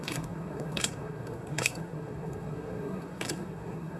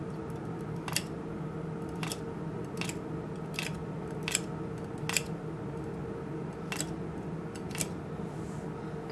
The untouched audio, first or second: second